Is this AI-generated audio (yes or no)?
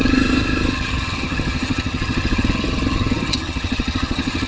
yes